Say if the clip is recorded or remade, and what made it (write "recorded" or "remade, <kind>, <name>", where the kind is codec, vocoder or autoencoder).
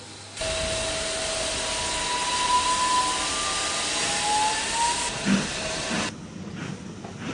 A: recorded